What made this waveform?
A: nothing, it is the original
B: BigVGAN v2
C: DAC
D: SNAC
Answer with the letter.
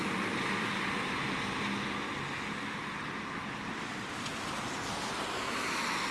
A